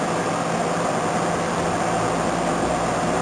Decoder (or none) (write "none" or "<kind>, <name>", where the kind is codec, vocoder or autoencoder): none